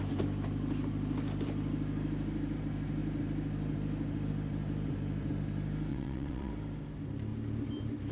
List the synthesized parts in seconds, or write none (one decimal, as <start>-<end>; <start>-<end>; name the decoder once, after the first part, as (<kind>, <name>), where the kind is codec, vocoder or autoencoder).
5.9-6.5 (vocoder, WaveNeXt)